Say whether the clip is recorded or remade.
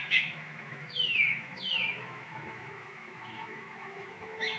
remade